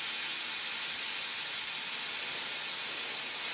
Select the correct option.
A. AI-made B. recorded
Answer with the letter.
B